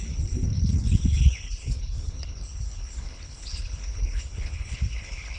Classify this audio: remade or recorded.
remade